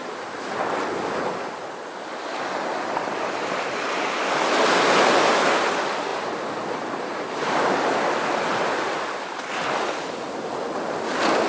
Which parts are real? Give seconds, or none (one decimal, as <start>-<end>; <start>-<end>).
0.0-11.5